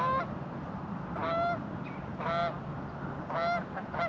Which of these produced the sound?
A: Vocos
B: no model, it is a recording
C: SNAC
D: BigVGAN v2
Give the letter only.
B